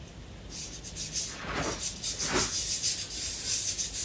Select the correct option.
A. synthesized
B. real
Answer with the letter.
B